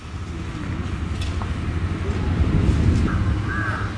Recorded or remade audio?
recorded